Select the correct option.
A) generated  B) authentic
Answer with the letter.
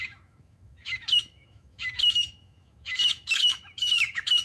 A